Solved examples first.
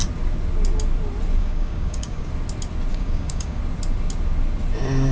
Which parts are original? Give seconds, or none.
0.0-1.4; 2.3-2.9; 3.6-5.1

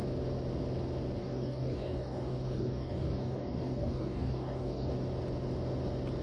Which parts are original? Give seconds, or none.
0.0-1.2; 4.9-6.2

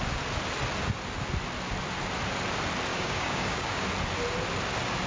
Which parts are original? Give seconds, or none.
0.0-2.9; 3.8-5.1

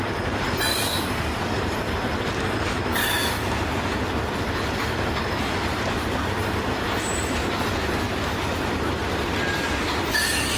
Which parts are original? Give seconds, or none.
0.0-0.7; 1.4-2.9; 3.5-10.6